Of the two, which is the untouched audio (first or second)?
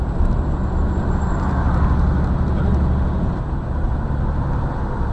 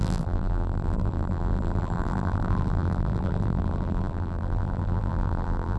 first